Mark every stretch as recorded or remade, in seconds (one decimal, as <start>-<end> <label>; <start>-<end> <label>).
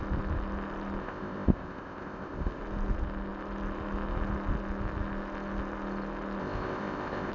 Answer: 0.0-1.0 recorded; 1.0-2.6 remade; 2.6-6.4 recorded; 6.4-7.3 remade